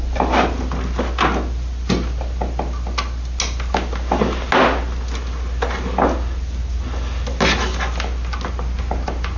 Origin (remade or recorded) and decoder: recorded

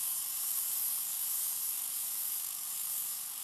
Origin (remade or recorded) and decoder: remade, codec, DAC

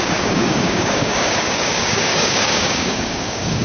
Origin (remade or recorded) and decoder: remade, codec, DAC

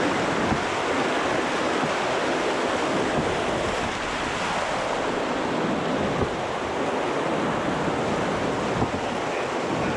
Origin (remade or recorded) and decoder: recorded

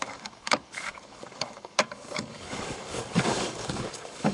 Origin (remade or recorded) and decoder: remade, codec, DAC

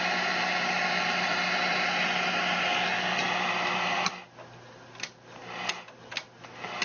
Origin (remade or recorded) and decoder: recorded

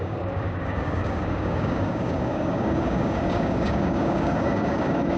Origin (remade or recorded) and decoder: remade, codec, DAC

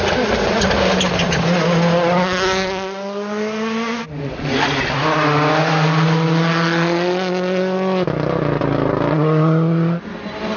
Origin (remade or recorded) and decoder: recorded